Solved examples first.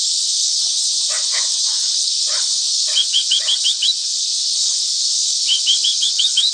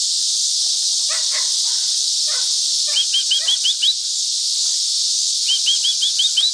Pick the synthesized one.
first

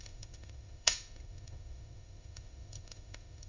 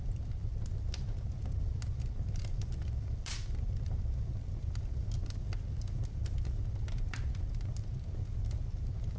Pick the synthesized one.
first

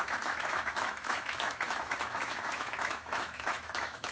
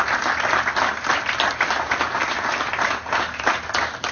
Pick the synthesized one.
first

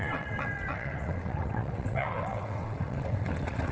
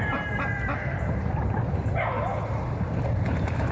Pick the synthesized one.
first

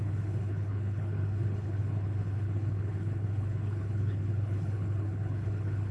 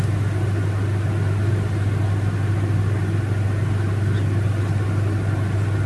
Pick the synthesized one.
first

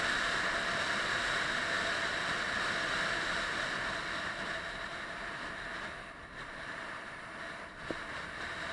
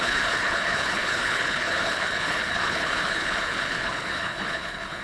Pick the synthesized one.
second